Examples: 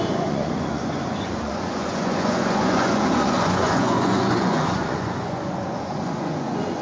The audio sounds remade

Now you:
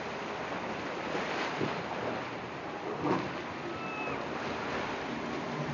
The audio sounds recorded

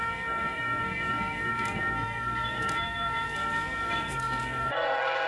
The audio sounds remade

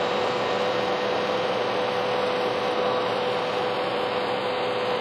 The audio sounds recorded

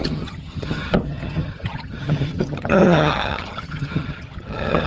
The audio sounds remade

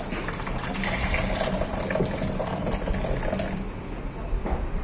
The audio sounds recorded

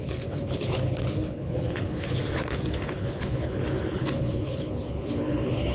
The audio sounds remade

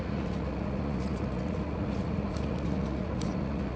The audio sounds remade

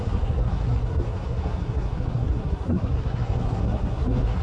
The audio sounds remade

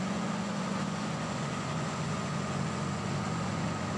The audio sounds remade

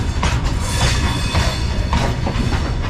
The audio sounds remade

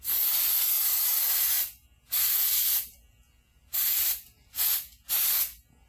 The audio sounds recorded